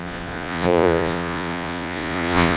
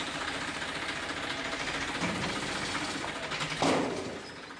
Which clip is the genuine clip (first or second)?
second